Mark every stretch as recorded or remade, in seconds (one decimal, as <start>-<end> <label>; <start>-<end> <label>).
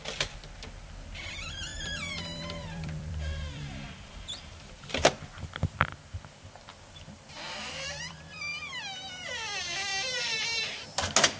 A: 0.0-1.7 recorded; 1.7-5.8 remade; 5.8-6.7 recorded; 6.7-8.5 remade; 8.5-9.9 recorded; 9.9-10.6 remade; 10.6-11.4 recorded